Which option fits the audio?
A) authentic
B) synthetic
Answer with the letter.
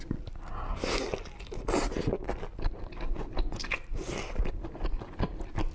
A